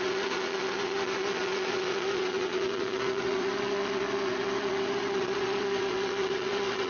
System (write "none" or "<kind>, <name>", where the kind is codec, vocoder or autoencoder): vocoder, Vocos